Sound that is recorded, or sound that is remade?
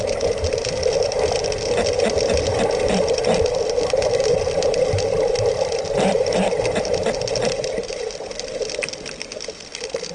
recorded